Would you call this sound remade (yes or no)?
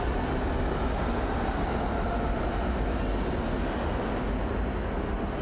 no